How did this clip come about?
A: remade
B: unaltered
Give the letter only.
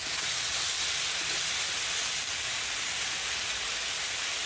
B